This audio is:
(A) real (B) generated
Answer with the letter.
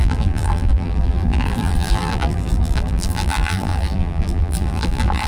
B